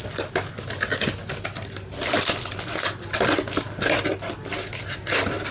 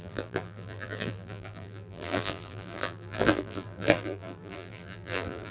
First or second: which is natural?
first